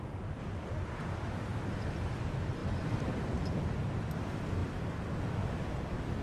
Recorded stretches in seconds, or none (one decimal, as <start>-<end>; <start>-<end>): 0.0-0.4; 1.1-2.6; 3.2-6.2